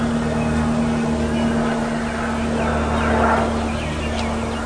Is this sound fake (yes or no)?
no